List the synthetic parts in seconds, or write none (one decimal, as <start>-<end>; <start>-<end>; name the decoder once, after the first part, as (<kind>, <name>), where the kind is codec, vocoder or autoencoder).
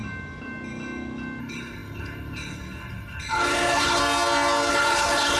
1.4-4.0 (codec, HILCodec); 4.7-5.4